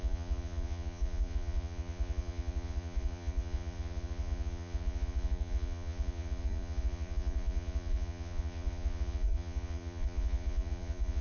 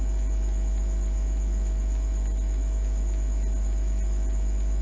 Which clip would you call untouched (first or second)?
second